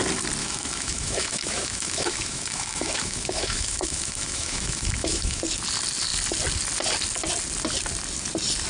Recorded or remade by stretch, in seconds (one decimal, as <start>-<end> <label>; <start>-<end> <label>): 0.0-0.4 recorded; 0.4-5.4 remade; 5.4-8.7 recorded